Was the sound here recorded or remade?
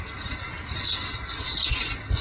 recorded